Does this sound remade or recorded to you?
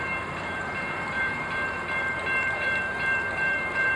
remade